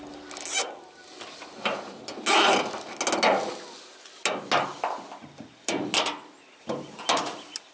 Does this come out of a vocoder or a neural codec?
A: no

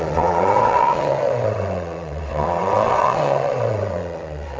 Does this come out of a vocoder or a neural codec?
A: yes